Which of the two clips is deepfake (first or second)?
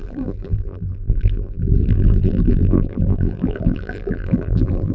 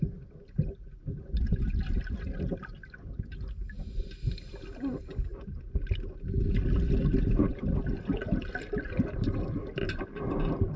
first